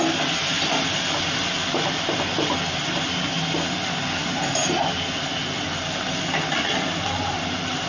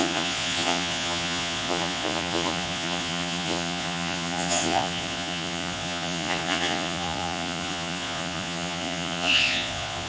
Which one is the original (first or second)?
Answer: first